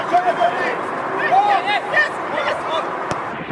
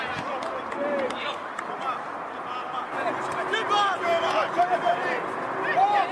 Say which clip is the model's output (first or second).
first